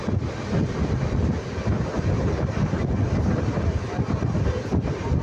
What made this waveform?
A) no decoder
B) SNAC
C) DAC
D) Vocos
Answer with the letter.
A